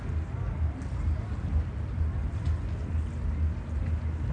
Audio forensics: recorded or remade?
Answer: recorded